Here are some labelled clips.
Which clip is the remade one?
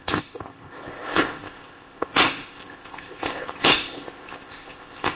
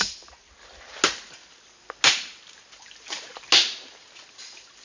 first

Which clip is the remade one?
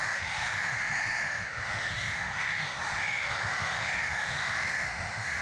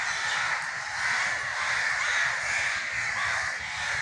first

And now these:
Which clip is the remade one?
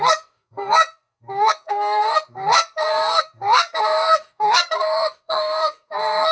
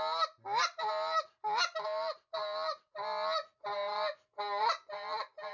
first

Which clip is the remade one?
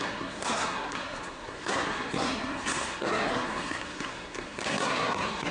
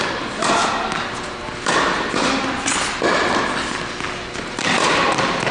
first